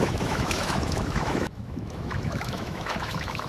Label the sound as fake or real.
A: fake